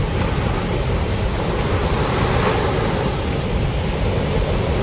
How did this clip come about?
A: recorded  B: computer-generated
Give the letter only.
A